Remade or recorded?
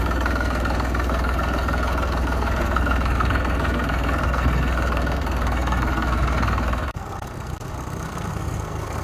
remade